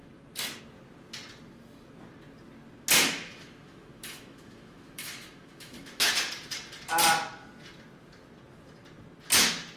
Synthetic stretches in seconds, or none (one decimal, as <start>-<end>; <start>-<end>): 3.0-6.1